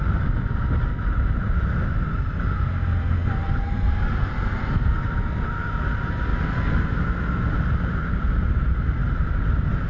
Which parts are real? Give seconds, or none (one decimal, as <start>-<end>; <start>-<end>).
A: 0.0-9.9